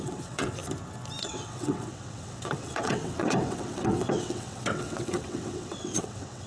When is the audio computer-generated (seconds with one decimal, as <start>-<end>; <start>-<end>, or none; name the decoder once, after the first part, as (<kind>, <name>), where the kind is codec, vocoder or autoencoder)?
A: 0.0-0.6 (vocoder, WaveNeXt); 1.2-6.5